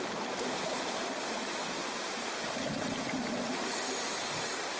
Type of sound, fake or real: real